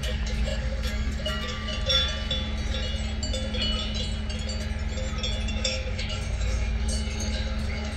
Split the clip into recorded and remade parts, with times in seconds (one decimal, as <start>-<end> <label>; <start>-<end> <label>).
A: 0.0-1.7 remade; 1.7-5.5 recorded; 5.5-8.0 remade